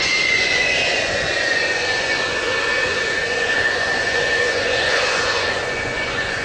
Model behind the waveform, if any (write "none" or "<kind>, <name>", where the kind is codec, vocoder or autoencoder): vocoder, Vocos